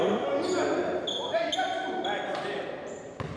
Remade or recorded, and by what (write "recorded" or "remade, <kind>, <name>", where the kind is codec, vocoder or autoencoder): recorded